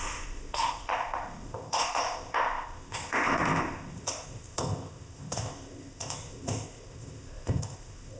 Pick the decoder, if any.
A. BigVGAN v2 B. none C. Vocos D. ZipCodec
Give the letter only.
D